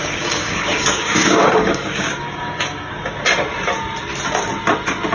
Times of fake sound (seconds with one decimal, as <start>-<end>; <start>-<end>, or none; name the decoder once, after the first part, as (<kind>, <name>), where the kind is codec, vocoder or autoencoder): 0.0-3.1 (codec, DAC)